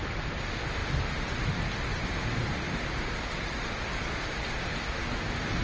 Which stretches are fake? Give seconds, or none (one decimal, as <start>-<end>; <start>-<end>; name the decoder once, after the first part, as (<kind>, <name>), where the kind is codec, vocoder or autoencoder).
none